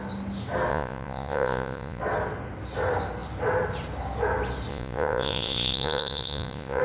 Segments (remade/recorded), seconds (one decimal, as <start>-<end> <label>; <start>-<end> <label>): 0.0-0.7 recorded; 0.7-2.0 remade; 2.0-4.7 recorded; 4.7-6.8 remade